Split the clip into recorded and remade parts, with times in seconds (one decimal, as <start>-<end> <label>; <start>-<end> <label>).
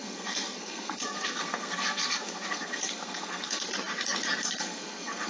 0.0-3.7 remade; 3.7-4.4 recorded; 4.4-5.3 remade